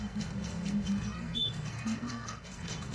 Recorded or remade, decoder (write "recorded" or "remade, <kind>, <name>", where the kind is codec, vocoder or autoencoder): remade, codec, SNAC